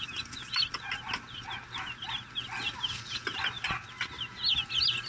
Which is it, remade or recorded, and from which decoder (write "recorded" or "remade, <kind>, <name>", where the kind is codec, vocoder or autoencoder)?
recorded